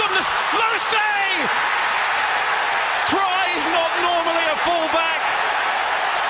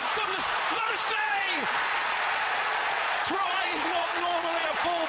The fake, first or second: second